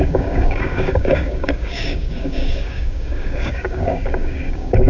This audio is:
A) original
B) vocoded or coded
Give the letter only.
B